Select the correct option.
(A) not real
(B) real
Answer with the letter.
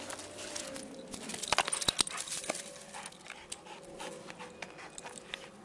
B